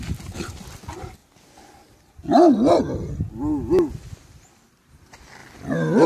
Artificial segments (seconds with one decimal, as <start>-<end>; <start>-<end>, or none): 0.0-1.2; 3.9-5.4